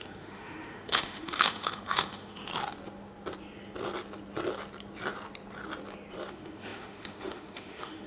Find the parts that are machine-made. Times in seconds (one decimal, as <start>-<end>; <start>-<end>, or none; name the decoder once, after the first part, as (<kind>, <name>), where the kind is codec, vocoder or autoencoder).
0.0-2.5 (autoencoder, DAC-VAE); 6.3-8.1